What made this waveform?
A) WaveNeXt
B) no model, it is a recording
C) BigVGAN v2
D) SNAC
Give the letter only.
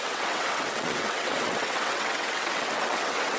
A